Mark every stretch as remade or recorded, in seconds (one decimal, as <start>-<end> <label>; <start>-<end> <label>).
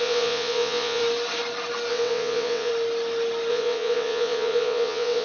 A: 0.0-1.0 remade; 1.0-1.9 recorded; 1.9-2.7 remade; 2.7-3.5 recorded; 3.5-5.2 remade